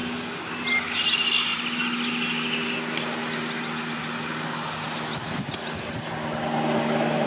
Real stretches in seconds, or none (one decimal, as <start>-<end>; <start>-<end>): 0.5-7.3